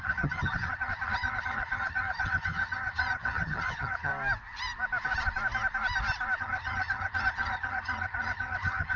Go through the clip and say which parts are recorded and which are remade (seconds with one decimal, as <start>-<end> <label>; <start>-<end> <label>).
0.0-4.1 remade; 4.1-6.4 recorded; 6.4-9.0 remade

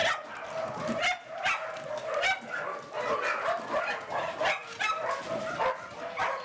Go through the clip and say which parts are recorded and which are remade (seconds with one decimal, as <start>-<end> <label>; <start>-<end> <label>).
0.0-6.4 recorded

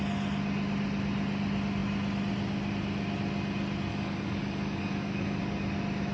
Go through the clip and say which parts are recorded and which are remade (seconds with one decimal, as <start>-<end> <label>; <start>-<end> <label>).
0.0-3.9 recorded; 3.9-5.4 remade; 5.4-6.1 recorded